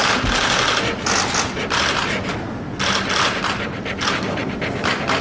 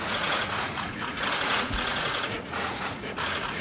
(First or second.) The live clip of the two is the first